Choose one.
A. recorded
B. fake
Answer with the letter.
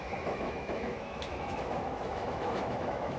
B